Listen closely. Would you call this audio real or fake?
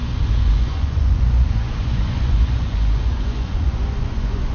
fake